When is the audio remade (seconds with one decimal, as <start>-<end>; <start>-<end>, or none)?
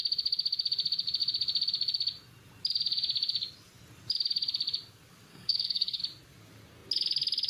5.3-6.0